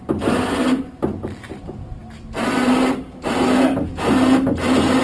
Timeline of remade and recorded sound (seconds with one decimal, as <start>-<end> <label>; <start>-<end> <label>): 0.0-5.0 recorded